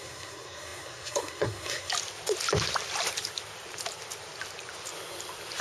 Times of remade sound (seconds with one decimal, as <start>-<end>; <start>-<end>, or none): 0.0-1.9